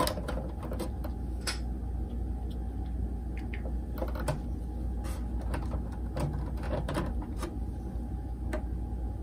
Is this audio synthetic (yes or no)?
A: no